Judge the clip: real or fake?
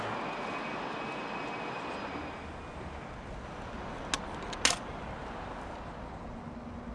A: real